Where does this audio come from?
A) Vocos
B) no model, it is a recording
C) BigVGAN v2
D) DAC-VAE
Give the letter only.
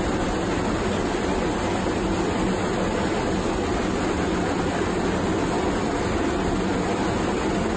B